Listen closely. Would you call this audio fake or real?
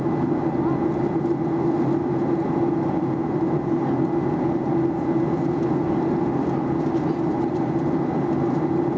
real